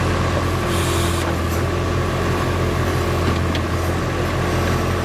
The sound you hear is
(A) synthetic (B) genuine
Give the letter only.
B